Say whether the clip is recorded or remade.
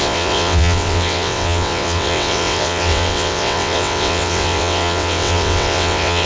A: remade